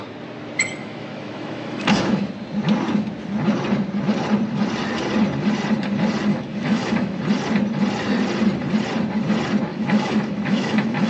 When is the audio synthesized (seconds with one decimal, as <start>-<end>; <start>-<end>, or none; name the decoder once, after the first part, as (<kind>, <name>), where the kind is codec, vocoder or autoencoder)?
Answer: 0.8-2.3 (autoencoder, DAC-VAE); 6.3-7.2; 9.7-11.1